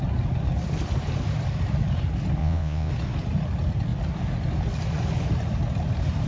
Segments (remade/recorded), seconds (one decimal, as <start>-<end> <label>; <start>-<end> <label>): 0.0-2.4 recorded; 2.4-2.9 remade; 2.9-6.3 recorded